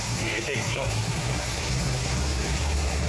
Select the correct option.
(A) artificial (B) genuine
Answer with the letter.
A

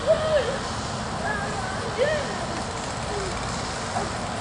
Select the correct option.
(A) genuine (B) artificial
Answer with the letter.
A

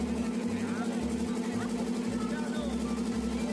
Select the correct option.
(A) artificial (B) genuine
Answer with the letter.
B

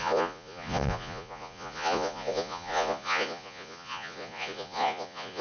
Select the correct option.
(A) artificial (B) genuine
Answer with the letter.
A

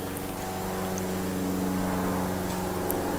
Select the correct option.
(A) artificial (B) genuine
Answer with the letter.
B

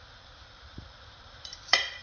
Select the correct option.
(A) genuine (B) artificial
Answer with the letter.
B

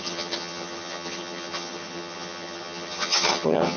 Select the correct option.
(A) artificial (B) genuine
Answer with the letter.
A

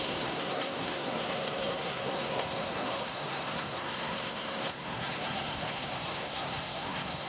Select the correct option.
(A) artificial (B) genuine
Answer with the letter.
A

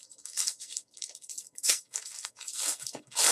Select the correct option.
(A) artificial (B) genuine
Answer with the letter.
A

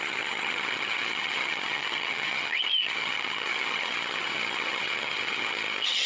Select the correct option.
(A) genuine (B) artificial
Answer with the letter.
B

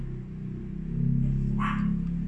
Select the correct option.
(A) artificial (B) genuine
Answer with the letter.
B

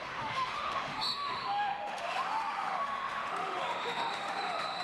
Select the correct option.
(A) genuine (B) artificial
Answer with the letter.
B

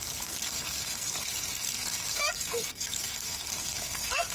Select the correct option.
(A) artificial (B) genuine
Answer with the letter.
A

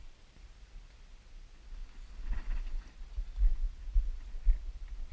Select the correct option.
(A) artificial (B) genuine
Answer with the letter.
B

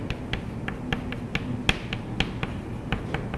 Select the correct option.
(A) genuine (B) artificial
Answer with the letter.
A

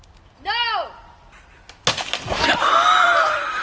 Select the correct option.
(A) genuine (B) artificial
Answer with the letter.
A